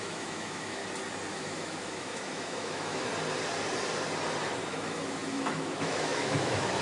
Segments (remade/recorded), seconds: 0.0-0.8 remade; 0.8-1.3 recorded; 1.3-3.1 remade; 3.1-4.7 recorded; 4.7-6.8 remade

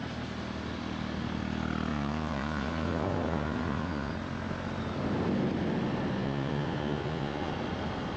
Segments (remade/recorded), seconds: 0.0-1.9 recorded; 1.9-4.1 remade; 4.1-6.2 recorded; 6.2-7.5 remade; 7.5-8.2 recorded